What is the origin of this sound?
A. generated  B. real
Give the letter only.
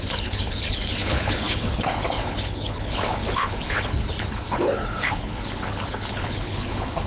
A